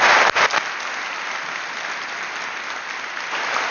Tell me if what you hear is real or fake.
real